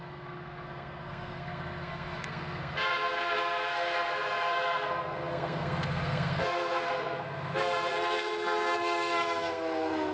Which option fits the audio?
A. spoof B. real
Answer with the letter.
A